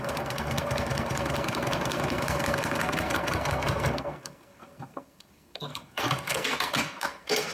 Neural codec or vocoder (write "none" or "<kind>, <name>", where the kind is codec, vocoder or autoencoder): codec, SNAC